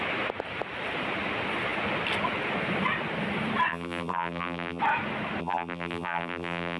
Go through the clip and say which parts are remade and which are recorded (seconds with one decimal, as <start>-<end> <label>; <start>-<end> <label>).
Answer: 0.0-3.7 recorded; 3.7-4.8 remade; 4.8-5.4 recorded; 5.4-6.8 remade